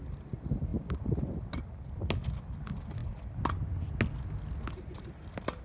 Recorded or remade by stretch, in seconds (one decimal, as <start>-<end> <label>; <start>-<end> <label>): 0.0-5.6 recorded